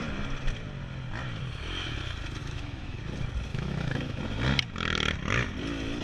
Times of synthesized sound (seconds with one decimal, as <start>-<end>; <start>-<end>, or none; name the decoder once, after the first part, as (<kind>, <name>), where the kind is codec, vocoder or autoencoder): 2.4-3.0 (autoencoder, DAC-VAE); 3.5-4.2